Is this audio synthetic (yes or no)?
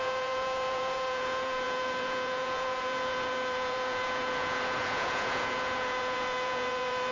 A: yes